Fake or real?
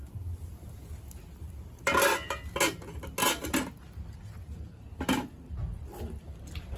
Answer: real